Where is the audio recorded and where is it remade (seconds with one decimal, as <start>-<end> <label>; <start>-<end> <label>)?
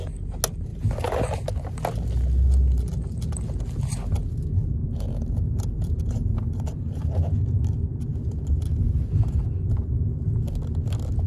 0.0-4.8 recorded; 4.8-7.0 remade; 7.0-11.3 recorded